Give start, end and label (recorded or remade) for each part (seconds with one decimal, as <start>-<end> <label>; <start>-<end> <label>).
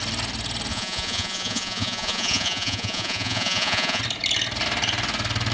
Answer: 0.0-0.7 recorded; 0.7-4.0 remade; 4.0-5.5 recorded